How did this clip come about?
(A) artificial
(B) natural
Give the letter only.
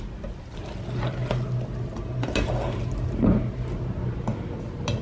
B